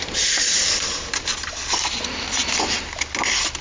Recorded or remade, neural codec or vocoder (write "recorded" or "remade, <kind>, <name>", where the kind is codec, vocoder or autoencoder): recorded